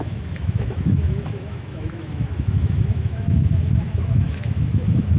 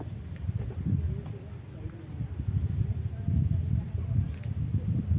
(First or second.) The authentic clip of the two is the second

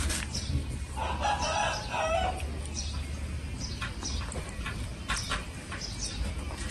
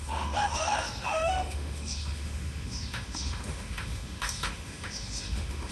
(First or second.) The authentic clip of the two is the first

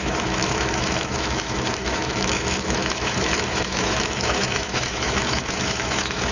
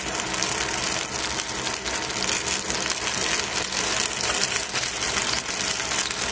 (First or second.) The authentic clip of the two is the second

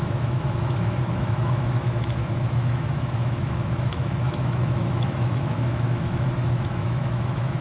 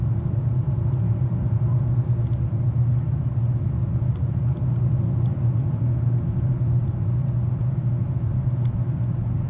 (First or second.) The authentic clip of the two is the second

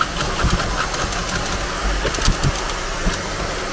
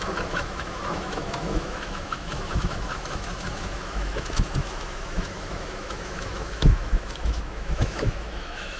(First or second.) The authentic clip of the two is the first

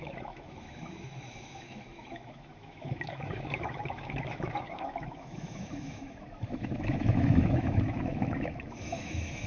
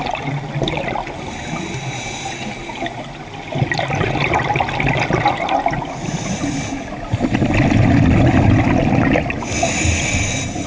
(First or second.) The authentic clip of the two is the second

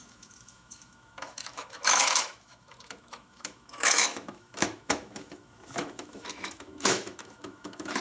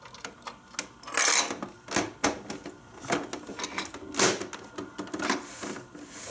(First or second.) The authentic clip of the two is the second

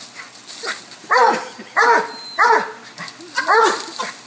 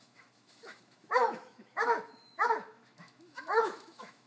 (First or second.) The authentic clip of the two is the first